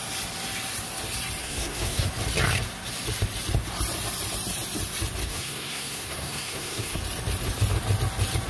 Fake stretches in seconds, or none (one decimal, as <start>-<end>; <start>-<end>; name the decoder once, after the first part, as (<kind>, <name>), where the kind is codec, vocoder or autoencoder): 1.4-2.1 (codec, SNAC); 5.2-7.0